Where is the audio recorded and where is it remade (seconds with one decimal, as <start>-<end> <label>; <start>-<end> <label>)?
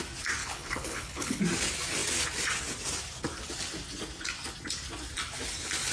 0.0-0.4 recorded; 0.4-1.4 remade; 1.4-5.9 recorded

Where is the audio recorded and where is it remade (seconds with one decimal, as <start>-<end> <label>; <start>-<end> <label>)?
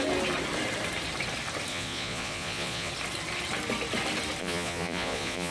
0.0-1.7 recorded; 1.7-2.9 remade; 2.9-4.4 recorded; 4.4-5.5 remade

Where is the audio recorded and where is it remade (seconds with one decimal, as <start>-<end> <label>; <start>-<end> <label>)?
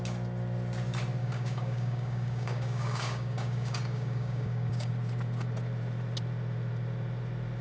0.0-1.2 recorded; 1.2-4.9 remade; 4.9-7.6 recorded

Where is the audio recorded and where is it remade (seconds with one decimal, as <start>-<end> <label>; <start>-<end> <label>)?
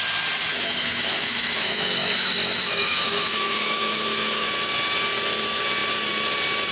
0.0-0.5 recorded; 0.5-4.5 remade; 4.5-6.7 recorded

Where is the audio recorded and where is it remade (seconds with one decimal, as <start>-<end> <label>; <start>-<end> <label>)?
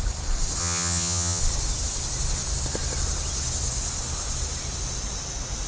0.0-0.6 recorded; 0.6-1.4 remade; 1.4-5.7 recorded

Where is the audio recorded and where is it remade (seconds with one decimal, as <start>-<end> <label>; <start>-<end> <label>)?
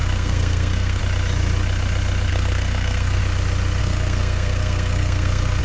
0.0-1.0 remade; 1.0-2.3 recorded; 2.3-3.2 remade; 3.2-3.8 recorded; 3.8-5.6 remade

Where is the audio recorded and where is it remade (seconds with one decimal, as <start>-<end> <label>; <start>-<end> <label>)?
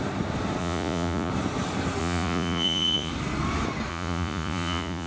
0.0-0.6 recorded; 0.6-1.3 remade; 1.3-2.0 recorded; 2.0-3.1 remade; 3.1-3.9 recorded; 3.9-5.1 remade